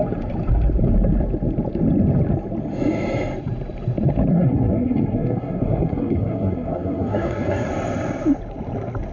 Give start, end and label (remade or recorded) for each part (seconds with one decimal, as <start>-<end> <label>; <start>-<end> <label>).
0.0-4.3 recorded; 4.3-7.7 remade; 7.7-9.1 recorded